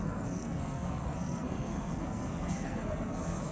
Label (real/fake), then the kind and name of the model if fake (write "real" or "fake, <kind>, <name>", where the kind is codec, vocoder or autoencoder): fake, codec, SNAC